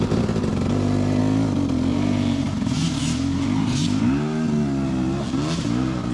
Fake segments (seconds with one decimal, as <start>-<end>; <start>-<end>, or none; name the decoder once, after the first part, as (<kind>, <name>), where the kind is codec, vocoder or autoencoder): 0.5-1.2 (vocoder, BigVGAN v2); 1.9-4.0